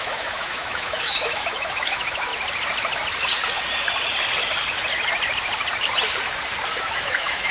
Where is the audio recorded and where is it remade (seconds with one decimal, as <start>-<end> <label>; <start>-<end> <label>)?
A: 0.0-2.3 remade; 2.3-6.8 recorded; 6.8-7.5 remade